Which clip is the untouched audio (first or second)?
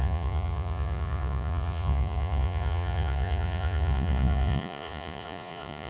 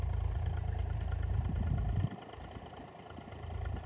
second